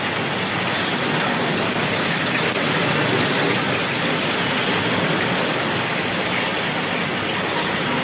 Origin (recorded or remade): recorded